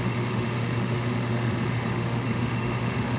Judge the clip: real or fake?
fake